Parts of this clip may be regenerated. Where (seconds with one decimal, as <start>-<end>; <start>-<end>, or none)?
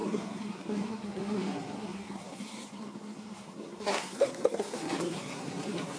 0.0-6.0